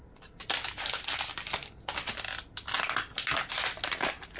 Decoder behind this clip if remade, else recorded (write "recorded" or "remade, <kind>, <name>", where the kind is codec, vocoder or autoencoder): recorded